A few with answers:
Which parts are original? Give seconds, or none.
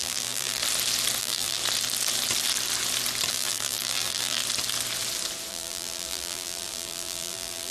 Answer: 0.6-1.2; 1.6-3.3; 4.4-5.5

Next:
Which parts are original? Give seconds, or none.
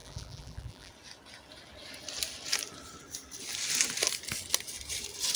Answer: 0.9-5.4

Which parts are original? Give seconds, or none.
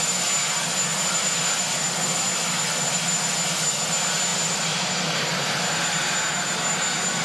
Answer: 0.0-7.2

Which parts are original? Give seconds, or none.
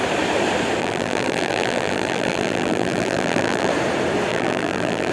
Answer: 0.0-0.8; 3.7-4.3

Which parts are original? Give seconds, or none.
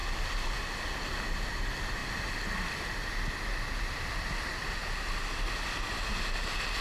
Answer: 0.0-6.8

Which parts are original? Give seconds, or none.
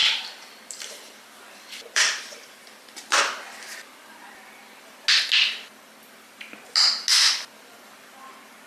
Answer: 3.2-8.7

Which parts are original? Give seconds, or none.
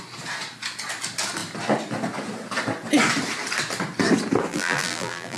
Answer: 0.0-4.5